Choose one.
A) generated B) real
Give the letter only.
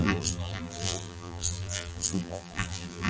A